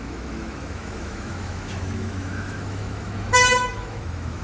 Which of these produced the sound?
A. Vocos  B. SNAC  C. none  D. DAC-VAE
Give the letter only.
D